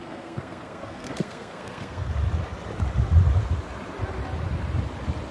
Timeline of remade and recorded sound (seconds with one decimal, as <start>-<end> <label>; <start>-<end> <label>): 0.0-2.1 remade; 2.1-5.3 recorded